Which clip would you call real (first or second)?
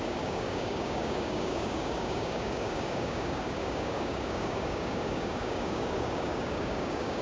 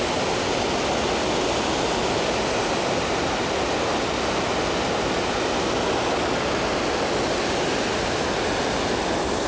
second